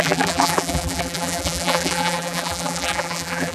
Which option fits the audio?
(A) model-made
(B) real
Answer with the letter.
A